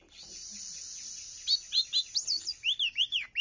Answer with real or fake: fake